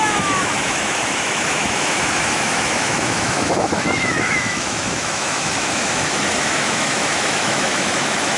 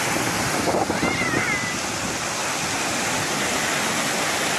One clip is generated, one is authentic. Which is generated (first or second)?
first